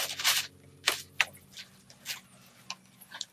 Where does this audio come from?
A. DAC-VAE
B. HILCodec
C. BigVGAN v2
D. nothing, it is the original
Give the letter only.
D